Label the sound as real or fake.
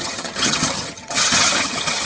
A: fake